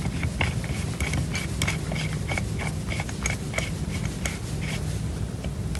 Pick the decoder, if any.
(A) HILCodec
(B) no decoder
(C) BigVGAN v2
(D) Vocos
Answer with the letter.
B